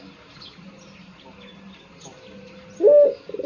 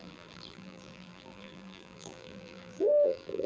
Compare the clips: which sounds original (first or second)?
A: first